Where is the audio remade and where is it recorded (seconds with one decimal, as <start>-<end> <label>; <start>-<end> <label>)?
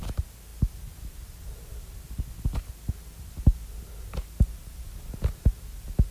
0.0-6.1 recorded